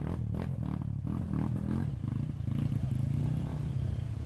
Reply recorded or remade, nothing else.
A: recorded